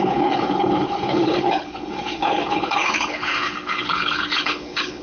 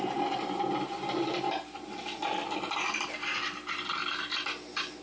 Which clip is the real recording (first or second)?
second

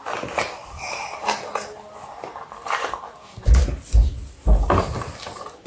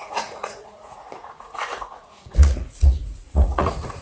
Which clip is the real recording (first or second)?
first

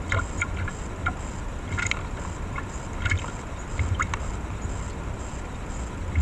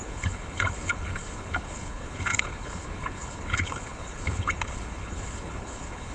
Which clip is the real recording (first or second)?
first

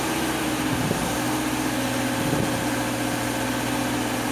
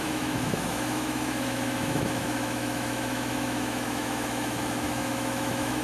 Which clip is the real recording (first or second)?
first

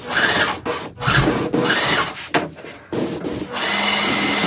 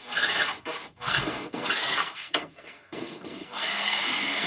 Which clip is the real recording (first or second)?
first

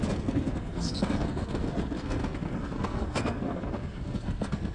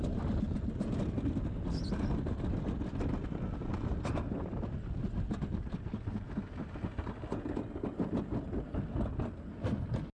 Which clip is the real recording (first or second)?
second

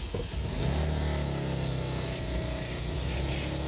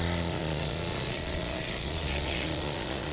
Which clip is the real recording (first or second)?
first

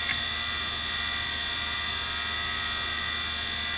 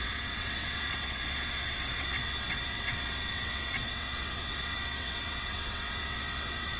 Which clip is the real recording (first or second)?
first